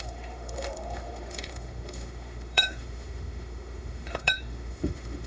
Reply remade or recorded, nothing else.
remade